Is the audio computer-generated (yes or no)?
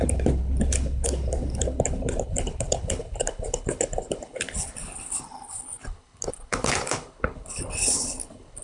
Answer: yes